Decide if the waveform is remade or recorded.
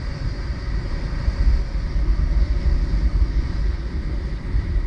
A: recorded